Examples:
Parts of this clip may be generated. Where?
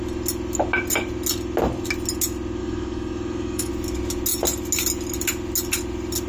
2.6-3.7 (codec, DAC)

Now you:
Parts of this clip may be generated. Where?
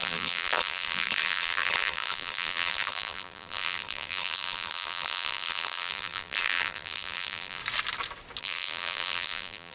0.0-7.6 (vocoder, BigVGAN v2); 8.4-9.7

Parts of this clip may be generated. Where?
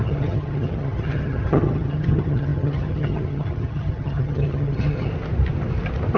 0.0-5.1 (vocoder, HiFi-GAN)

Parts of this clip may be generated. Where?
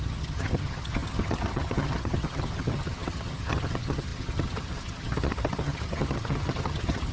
0.0-7.1 (vocoder, HiFi-GAN)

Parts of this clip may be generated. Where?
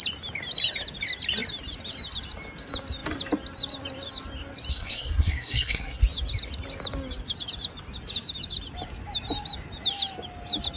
4.7-6.0 (codec, SNAC)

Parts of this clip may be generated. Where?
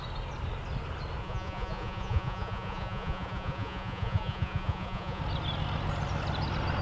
1.2-5.2 (vocoder, Vocos)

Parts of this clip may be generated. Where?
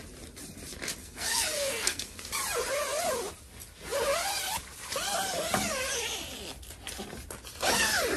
1.0-2.3 (codec, SNAC)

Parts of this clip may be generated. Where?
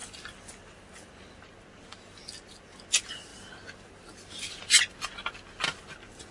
none